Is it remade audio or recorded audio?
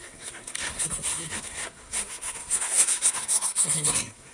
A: remade